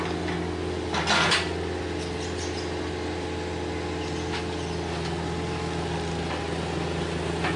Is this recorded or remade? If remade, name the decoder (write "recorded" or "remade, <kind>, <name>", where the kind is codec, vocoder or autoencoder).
recorded